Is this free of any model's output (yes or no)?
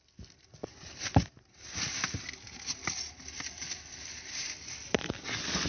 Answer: yes